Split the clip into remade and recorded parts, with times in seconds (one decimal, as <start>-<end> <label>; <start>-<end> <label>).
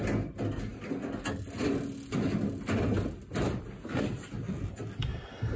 0.0-5.1 recorded; 5.1-5.6 remade